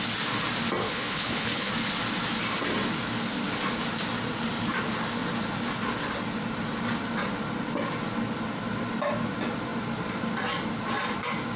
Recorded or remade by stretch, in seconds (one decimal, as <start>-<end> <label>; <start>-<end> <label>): 0.0-0.8 recorded; 0.8-1.7 remade; 1.7-11.6 recorded